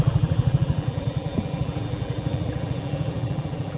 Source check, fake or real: fake